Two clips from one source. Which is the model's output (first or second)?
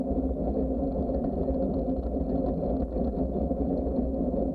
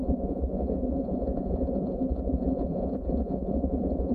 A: second